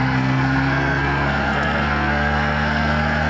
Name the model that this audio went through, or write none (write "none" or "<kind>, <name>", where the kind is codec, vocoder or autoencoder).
codec, SNAC